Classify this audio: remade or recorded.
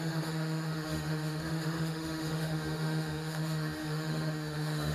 remade